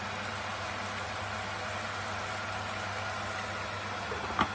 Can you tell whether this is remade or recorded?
recorded